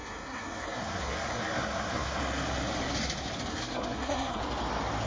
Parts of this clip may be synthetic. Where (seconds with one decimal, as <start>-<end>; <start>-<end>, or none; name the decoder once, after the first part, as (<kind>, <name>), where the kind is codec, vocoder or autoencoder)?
0.0-2.2 (codec, SNAC); 3.5-4.4